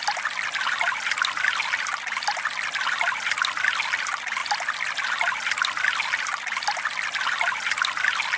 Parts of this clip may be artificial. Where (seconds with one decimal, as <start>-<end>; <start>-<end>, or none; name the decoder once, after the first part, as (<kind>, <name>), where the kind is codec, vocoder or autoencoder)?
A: none